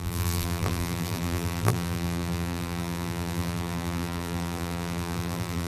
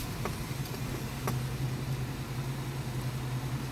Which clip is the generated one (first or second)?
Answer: first